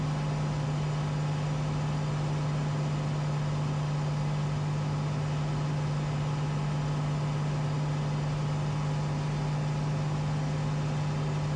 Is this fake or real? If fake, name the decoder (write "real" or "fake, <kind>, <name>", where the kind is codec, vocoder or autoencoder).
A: real